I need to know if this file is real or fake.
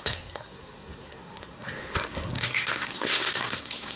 fake